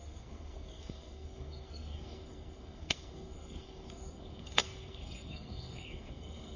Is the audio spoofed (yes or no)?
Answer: yes